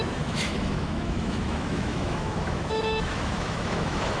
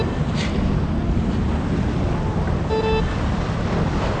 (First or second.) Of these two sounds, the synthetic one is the first